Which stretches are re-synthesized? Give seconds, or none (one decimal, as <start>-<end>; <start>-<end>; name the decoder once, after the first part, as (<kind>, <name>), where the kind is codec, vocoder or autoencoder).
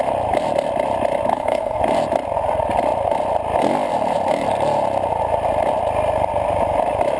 1.3-1.8 (codec, SNAC)